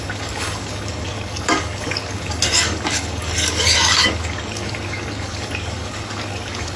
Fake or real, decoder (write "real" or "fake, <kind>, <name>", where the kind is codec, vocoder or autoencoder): fake, codec, DAC